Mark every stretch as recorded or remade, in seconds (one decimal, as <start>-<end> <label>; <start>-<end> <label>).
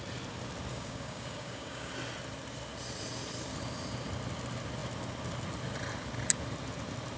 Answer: 0.0-0.7 recorded; 0.7-1.9 remade; 1.9-7.2 recorded